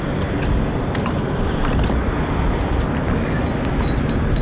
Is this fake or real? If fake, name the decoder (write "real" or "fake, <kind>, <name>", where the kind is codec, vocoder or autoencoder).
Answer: real